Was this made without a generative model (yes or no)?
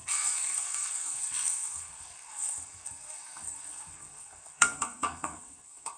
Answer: no